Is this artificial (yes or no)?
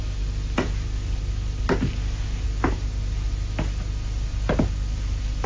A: no